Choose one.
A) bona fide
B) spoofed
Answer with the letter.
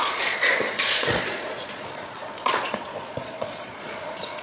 B